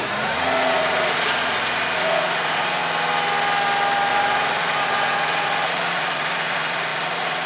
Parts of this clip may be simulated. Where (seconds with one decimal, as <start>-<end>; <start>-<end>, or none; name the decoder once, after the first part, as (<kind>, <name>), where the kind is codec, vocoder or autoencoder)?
0.0-2.8 (vocoder, Vocos); 4.1-7.5